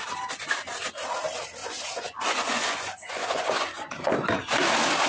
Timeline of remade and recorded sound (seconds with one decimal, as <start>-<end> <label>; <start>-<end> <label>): 0.0-1.6 recorded; 1.6-4.1 remade; 4.1-5.1 recorded